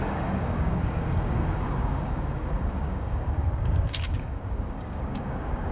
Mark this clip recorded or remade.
remade